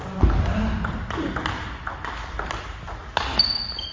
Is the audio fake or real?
real